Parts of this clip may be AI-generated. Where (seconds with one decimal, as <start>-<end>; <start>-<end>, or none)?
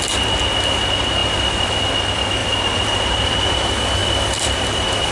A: 1.2-1.8; 2.4-3.4; 4.0-5.1